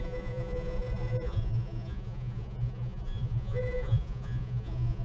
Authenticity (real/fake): fake